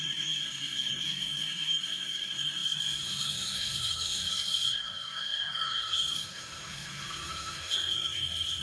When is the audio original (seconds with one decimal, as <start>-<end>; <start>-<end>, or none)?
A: none